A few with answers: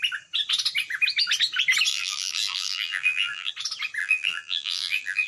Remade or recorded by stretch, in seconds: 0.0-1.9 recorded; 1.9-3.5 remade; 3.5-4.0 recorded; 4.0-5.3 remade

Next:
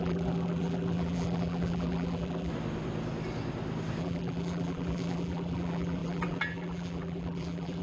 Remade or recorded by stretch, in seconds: 0.0-2.5 remade; 2.5-4.0 recorded; 4.0-7.8 remade

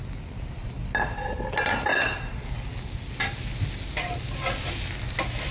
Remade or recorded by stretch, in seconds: 0.0-5.5 recorded

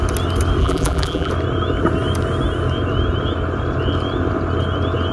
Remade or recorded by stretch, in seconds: 0.0-0.6 recorded; 0.6-1.3 remade; 1.3-5.1 recorded

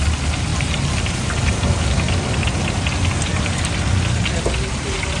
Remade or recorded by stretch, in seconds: 0.0-0.5 recorded; 0.5-1.5 remade; 1.5-5.2 recorded

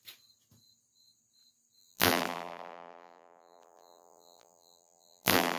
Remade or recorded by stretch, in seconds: 0.0-1.8 recorded; 1.8-5.6 remade

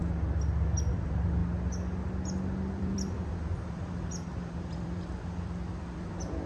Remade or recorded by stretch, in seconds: 0.0-0.9 recorded; 0.9-1.4 remade; 1.4-2.7 recorded; 2.7-6.5 remade

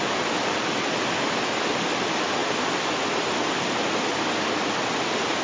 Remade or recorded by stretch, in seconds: 0.0-5.4 recorded